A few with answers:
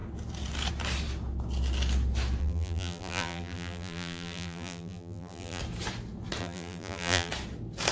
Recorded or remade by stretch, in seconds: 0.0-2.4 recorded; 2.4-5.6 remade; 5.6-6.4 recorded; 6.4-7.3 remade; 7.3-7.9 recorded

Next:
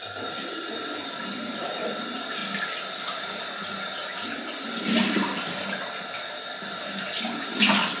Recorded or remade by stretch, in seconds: 0.0-8.0 recorded

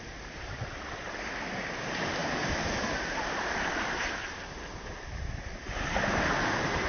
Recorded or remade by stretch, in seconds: 0.0-6.9 recorded

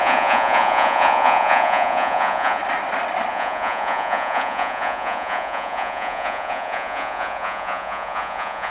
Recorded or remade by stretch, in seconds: 0.0-2.6 remade; 2.6-3.3 recorded; 3.3-8.7 remade